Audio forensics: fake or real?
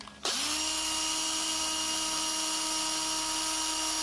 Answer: real